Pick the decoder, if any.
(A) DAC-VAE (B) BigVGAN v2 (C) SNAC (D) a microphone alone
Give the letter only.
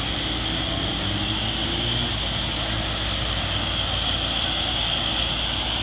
D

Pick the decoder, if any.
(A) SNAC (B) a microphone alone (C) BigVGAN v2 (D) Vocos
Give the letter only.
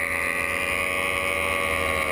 B